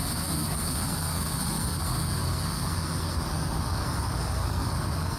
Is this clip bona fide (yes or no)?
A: no